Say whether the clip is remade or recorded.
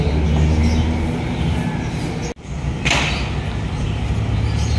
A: recorded